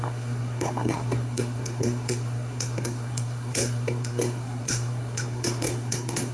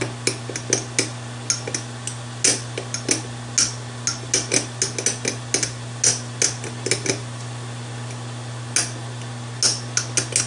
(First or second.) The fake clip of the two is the first